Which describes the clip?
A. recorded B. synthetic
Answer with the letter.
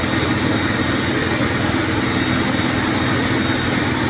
A